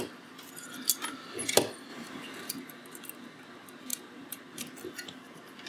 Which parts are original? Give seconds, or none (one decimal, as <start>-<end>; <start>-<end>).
0.0-1.9; 2.5-3.9; 4.4-5.7